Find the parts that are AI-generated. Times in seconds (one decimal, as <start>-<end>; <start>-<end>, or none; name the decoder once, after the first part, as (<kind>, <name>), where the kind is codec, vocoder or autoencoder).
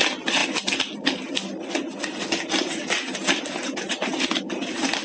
none